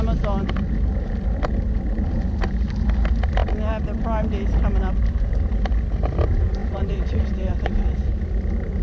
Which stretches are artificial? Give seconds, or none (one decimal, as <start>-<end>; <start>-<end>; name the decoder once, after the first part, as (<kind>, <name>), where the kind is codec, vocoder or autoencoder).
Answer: 6.6-8.1 (vocoder, Vocos)